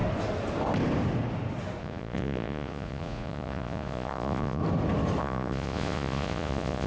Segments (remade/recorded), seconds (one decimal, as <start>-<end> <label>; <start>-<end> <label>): 0.0-1.8 recorded; 1.8-4.6 remade; 4.6-5.2 recorded; 5.2-6.9 remade